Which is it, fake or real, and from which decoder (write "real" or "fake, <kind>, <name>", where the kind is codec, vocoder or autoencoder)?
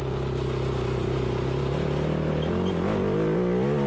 real